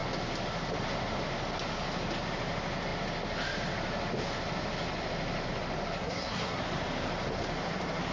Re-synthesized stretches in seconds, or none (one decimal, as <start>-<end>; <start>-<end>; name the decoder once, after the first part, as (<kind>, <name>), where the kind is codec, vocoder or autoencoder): 6.0-6.6 (codec, SNAC)